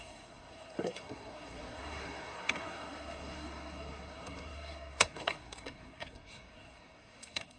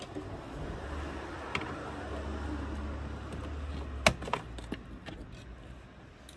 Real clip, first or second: second